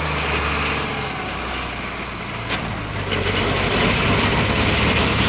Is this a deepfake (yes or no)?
no